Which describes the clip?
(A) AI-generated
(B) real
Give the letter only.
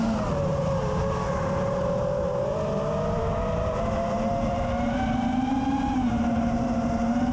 A